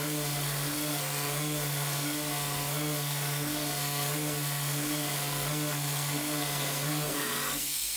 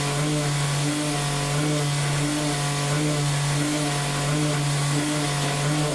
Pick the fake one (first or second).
first